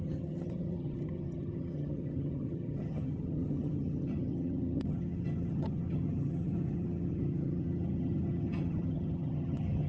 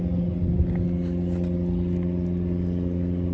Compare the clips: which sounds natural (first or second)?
second